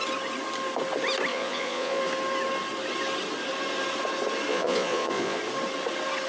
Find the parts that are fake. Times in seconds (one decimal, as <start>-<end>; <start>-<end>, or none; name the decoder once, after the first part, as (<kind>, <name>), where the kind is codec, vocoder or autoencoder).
1.3-2.0 (vocoder, Vocos); 4.5-5.4